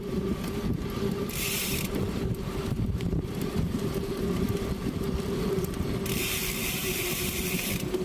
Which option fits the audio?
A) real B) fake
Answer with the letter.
B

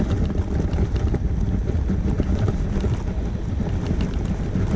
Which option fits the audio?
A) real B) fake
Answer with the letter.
A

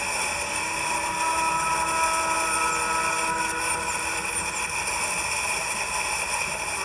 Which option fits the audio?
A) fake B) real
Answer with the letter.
B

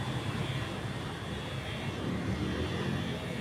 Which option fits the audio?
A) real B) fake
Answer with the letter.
B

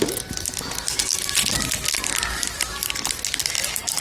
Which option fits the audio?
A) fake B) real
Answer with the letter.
B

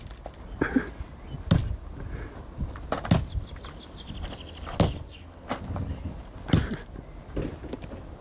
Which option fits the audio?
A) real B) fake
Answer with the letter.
A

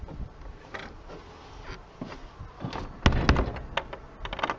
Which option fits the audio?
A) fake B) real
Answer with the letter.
B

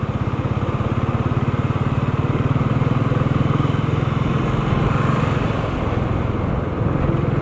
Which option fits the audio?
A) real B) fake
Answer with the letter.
A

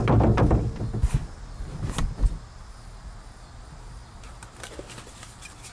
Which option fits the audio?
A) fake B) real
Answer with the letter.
B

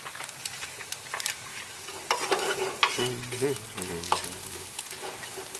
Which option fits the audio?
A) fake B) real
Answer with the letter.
B